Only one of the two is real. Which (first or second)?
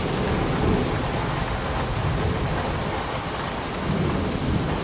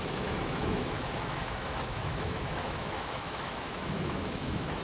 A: first